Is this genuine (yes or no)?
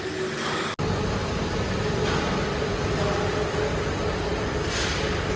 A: yes